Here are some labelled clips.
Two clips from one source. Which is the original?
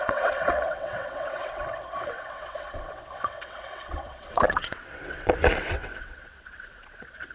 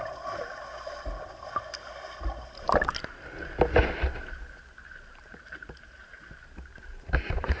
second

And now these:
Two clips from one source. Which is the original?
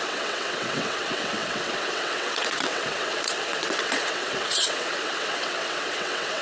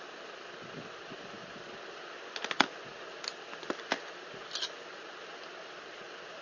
second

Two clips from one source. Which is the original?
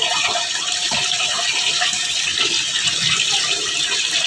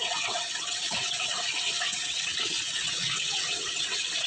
first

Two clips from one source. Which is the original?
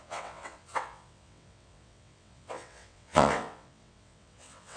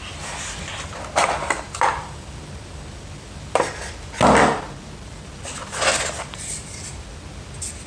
second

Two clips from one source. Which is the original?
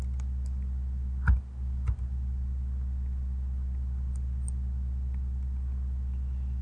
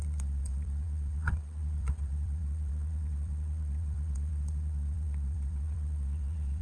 first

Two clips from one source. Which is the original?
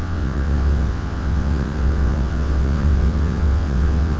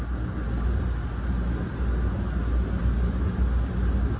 second